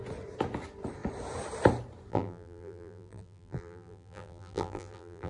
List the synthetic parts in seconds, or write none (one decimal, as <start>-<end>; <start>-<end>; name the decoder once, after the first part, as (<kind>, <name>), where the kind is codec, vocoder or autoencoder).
2.1-5.3 (vocoder, BigVGAN v2)